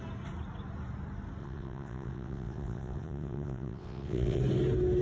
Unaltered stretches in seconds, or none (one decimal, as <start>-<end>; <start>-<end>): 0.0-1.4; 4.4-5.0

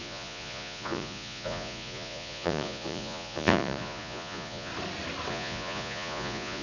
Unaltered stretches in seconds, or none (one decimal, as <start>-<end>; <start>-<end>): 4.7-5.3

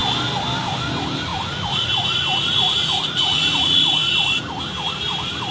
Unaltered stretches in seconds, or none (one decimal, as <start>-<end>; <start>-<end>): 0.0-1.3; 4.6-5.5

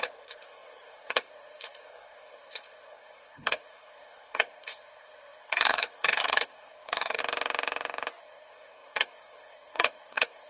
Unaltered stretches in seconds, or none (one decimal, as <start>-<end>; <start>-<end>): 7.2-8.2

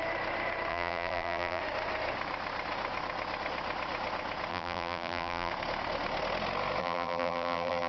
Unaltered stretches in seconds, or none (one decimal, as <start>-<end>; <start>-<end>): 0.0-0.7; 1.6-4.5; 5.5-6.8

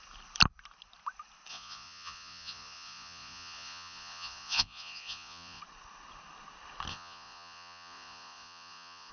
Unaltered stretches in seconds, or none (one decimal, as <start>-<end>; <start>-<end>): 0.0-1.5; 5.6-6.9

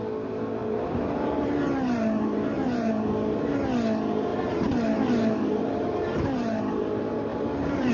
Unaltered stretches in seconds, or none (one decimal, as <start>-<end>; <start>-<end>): 0.0-0.6; 3.1-4.3; 6.8-7.3

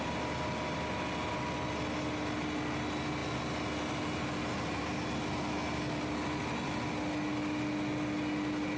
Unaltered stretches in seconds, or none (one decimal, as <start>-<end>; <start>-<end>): 0.0-8.8